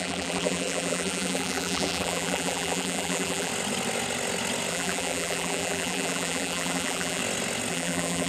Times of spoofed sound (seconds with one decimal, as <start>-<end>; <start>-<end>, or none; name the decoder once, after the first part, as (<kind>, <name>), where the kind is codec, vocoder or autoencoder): 0.0-3.5 (vocoder, BigVGAN v2); 4.7-7.2; 7.7-8.3